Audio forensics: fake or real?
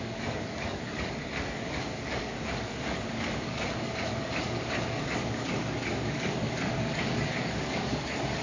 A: fake